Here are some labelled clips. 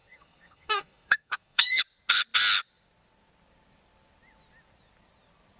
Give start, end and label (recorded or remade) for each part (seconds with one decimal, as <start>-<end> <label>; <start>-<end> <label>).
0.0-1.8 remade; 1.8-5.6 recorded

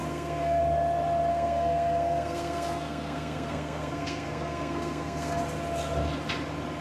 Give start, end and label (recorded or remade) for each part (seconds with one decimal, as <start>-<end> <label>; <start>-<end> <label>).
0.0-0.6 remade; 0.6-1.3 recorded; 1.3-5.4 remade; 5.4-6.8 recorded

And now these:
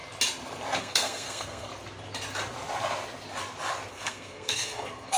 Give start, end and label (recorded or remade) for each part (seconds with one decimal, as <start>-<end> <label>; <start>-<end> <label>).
0.0-0.8 recorded; 0.8-1.7 remade; 1.7-3.9 recorded; 3.9-5.2 remade

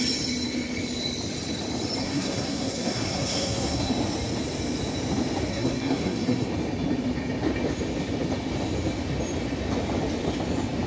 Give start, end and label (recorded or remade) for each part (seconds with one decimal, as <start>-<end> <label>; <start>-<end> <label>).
0.0-2.0 recorded; 2.0-3.9 remade; 3.9-5.5 recorded; 5.5-6.5 remade; 6.5-10.9 recorded

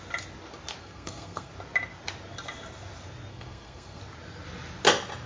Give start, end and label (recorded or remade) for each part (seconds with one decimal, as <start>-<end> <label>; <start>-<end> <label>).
0.0-0.8 recorded; 0.8-1.5 remade; 1.5-3.3 recorded; 3.3-4.0 remade; 4.0-5.3 recorded

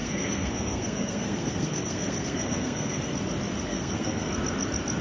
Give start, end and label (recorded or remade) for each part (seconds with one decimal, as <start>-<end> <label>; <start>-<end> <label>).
0.0-3.0 remade; 3.0-3.7 recorded; 3.7-4.3 remade; 4.3-5.0 recorded